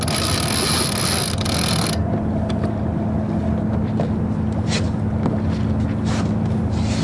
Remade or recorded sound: recorded